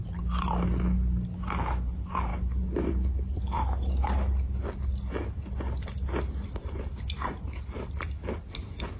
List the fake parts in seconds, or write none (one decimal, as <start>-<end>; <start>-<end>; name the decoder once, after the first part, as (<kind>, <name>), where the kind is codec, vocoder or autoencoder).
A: none